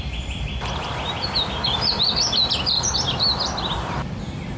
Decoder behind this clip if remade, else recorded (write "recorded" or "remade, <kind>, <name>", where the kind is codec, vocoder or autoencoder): remade, vocoder, BigVGAN v2